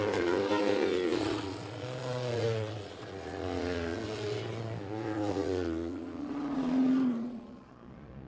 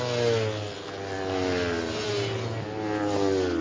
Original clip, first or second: second